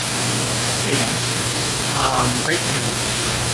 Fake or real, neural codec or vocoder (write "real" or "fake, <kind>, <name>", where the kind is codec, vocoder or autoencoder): fake, codec, DAC